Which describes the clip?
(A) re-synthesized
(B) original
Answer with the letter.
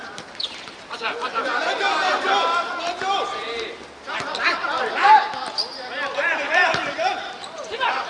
A